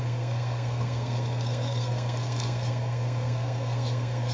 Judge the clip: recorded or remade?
remade